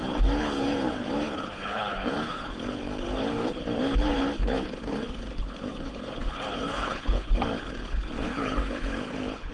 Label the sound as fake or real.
fake